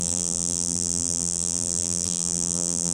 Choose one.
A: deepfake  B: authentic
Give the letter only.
A